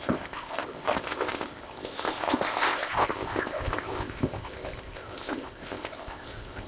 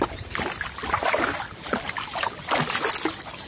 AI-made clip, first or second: first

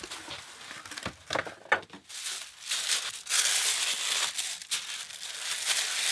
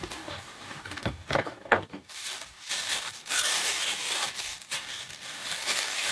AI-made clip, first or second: second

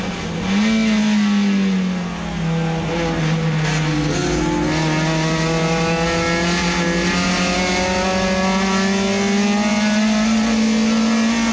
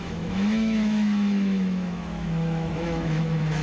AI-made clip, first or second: second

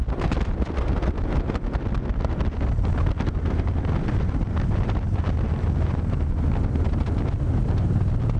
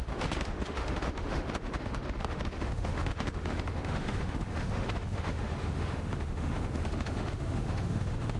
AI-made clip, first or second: second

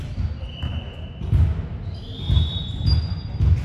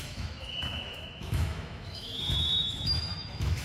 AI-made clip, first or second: second